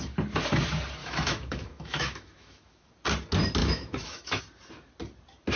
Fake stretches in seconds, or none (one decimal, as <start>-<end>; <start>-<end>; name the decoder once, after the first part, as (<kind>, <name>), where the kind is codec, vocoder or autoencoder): 1.0-2.9 (autoencoder, DAC-VAE); 3.6-4.4